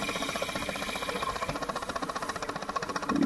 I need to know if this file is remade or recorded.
recorded